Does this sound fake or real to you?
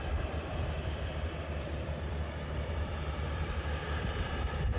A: fake